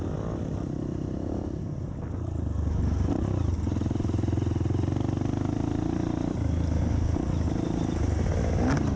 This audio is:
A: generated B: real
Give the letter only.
B